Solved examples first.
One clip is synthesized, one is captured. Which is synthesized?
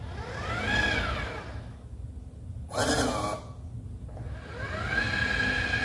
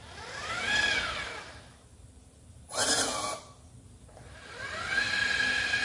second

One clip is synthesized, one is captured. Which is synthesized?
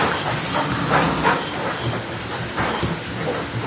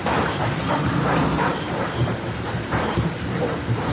second